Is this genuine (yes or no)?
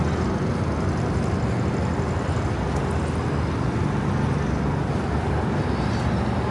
yes